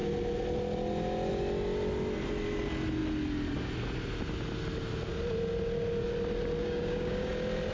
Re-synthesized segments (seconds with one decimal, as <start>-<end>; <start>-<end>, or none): 6.6-7.3